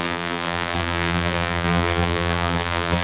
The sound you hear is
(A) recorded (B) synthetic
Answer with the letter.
B